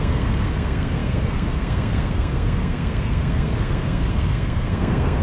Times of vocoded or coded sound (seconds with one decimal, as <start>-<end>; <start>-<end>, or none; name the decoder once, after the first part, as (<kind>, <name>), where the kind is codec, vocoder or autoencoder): 0.0-5.2 (codec, SNAC)